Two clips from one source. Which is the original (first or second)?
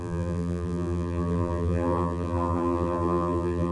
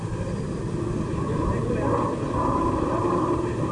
second